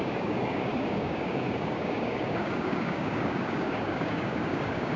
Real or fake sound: fake